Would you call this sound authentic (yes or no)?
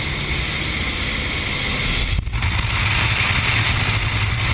yes